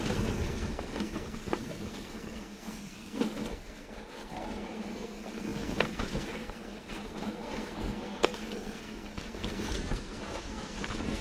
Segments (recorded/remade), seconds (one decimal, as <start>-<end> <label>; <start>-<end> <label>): 0.0-11.2 remade